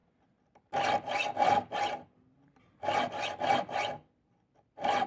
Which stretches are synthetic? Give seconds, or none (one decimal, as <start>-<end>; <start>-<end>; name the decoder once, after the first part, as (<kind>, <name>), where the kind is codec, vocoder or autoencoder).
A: none